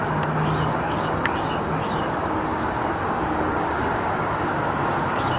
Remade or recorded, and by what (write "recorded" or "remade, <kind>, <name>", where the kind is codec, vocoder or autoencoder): remade, codec, DAC